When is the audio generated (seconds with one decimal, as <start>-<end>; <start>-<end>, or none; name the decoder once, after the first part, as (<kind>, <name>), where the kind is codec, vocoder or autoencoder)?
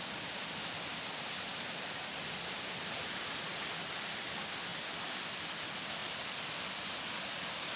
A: none